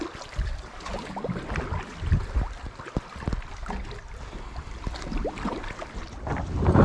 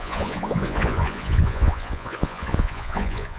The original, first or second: first